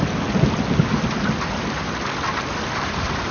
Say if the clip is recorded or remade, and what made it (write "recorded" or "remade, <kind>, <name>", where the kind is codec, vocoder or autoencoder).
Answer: recorded